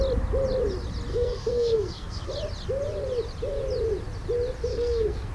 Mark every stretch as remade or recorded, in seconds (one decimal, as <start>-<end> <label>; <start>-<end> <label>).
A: 0.0-1.1 recorded; 1.1-2.3 remade; 2.3-4.7 recorded; 4.7-5.3 remade